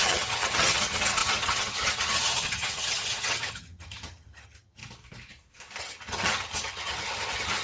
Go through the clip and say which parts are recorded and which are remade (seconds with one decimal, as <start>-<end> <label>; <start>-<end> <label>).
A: 0.0-4.8 remade; 4.8-5.8 recorded; 5.8-7.6 remade